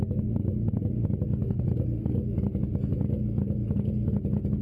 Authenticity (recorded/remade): recorded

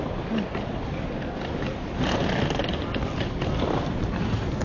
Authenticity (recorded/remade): recorded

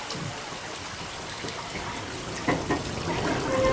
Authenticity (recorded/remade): recorded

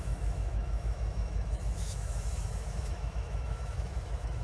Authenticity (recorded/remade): remade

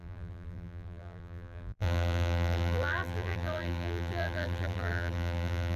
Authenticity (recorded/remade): remade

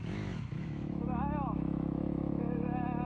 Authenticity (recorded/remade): remade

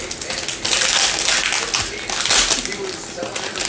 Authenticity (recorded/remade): recorded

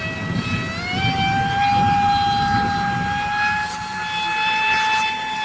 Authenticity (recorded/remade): recorded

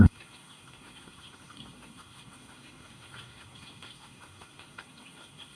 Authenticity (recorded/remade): remade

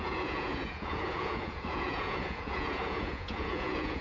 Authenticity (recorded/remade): remade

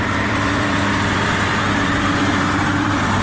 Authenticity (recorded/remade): remade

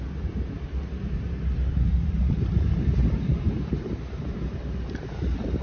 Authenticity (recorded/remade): remade